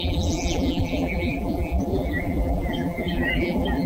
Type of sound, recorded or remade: remade